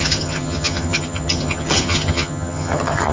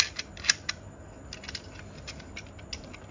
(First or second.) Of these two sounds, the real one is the second